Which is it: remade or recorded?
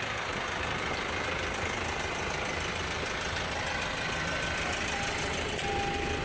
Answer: recorded